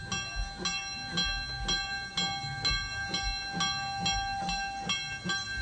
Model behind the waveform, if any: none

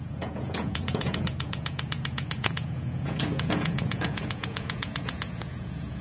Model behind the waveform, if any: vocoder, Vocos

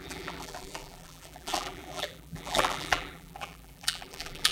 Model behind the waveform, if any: vocoder, BigVGAN v2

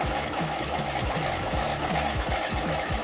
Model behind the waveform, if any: autoencoder, DAC-VAE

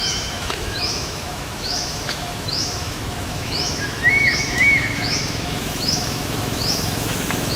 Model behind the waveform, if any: autoencoder, DAC-VAE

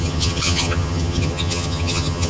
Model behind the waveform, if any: vocoder, HiFi-GAN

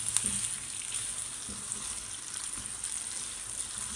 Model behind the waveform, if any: none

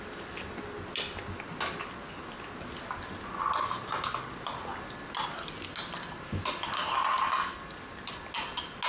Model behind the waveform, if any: none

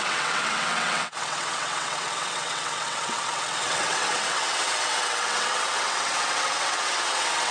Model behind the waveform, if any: vocoder, WaveNeXt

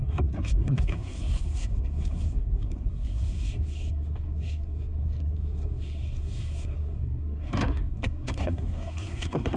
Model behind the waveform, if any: codec, SNAC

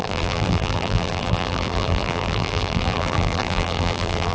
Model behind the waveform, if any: vocoder, BigVGAN v2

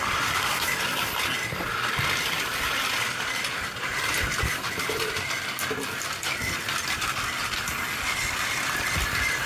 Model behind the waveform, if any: none